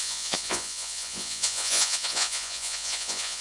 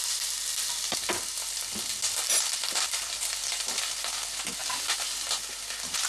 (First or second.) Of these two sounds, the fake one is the first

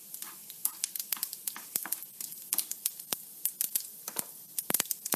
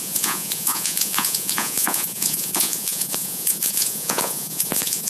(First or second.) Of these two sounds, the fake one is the second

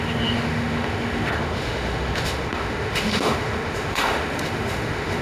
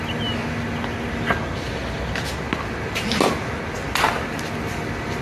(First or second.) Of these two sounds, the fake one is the first